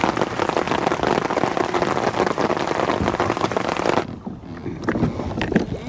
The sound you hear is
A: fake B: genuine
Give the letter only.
B